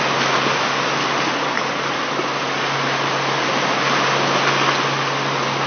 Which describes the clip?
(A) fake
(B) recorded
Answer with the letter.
B